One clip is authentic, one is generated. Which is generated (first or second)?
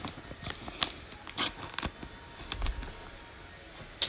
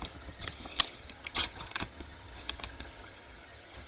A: second